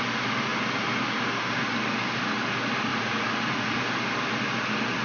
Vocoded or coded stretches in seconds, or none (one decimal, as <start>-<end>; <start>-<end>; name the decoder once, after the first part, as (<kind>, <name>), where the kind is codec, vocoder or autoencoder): 2.9-3.8 (vocoder, Vocos)